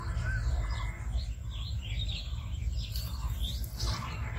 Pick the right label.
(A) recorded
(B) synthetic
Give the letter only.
A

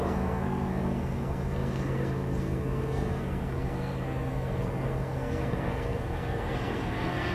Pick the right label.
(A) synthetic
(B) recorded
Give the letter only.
A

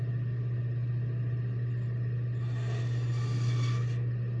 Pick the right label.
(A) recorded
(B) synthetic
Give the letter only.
A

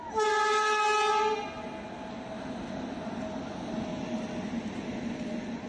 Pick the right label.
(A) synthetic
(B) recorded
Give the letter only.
B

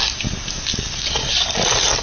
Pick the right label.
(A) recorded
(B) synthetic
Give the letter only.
A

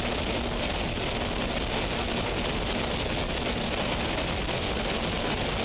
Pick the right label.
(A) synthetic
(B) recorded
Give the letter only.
B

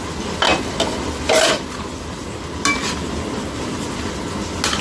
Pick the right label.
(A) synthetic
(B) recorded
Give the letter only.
B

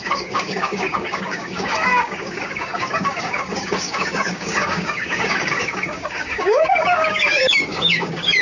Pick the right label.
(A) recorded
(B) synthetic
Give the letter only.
B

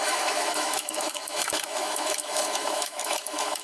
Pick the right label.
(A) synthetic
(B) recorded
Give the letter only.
A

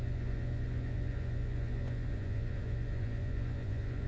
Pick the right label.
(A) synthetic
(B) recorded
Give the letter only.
A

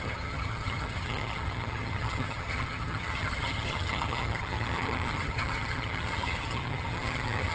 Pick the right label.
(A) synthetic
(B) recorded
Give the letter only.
A